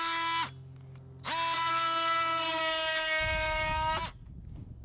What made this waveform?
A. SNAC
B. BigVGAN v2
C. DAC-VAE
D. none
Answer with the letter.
D